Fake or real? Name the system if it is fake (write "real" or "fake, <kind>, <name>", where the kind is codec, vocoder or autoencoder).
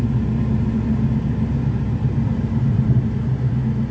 real